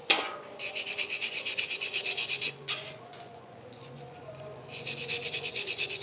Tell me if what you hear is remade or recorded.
remade